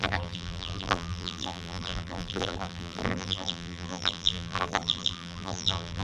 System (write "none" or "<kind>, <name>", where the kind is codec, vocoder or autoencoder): vocoder, BigVGAN v2